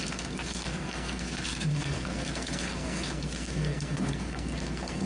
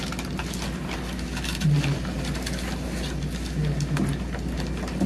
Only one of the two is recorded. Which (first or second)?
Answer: second